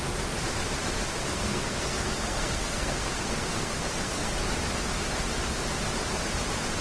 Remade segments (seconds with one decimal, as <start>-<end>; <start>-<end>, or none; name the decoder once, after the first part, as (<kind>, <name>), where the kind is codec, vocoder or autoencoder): 1.1-4.3 (codec, SNAC)